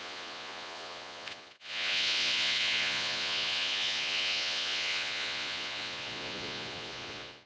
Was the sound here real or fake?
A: fake